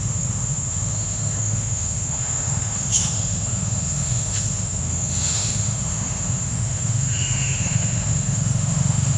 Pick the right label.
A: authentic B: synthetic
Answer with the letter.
B